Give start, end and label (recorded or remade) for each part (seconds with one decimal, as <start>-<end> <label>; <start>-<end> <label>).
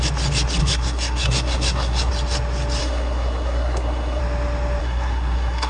0.0-0.6 recorded; 0.6-2.1 remade; 2.1-2.8 recorded; 2.8-4.2 remade; 4.2-4.8 recorded; 4.8-5.7 remade